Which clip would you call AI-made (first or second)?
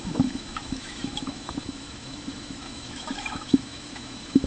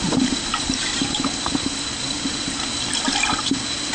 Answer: first